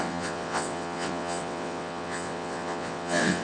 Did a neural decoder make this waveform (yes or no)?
yes